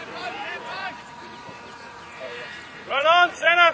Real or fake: fake